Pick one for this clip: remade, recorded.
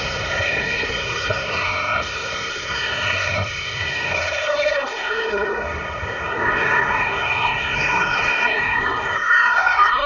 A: remade